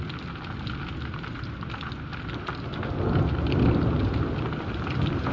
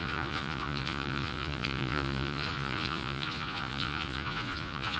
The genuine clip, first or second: first